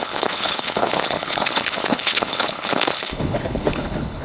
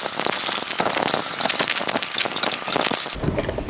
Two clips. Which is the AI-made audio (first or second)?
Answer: first